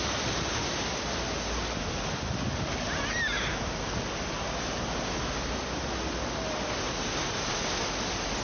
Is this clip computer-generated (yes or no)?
no